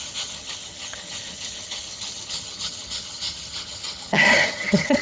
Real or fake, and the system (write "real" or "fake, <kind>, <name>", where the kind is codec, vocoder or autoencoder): fake, vocoder, HiFi-GAN